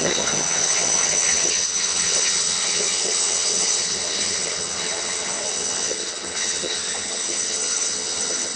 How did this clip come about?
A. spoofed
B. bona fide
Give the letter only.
A